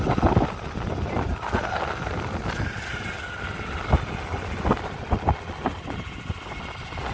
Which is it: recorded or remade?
recorded